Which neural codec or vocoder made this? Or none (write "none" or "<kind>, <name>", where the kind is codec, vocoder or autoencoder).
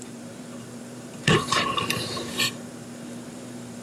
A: vocoder, BigVGAN v2